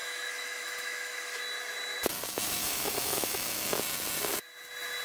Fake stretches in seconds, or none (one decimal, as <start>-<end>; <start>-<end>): 0.0-1.4; 2.6-3.8